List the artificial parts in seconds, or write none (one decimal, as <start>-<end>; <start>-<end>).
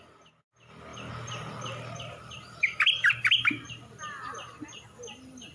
0.0-5.5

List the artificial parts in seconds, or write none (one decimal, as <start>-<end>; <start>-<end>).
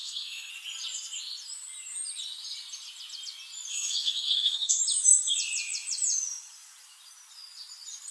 0.0-0.5; 3.7-4.8